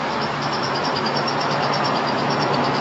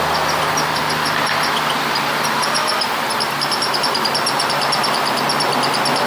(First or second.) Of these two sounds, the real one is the second